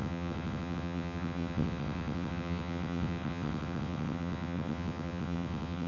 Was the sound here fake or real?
fake